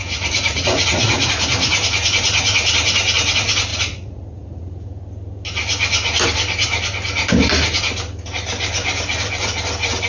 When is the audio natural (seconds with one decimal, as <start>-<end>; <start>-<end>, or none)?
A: 1.3-3.7; 5.0-10.1